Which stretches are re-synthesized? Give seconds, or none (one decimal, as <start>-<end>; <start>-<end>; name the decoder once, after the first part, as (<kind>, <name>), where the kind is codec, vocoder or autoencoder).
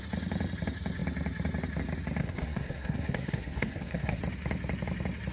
2.2-4.2 (codec, SNAC)